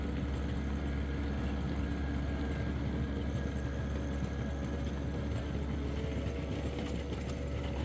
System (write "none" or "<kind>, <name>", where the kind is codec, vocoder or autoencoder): none